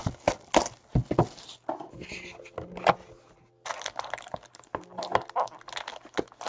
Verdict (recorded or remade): recorded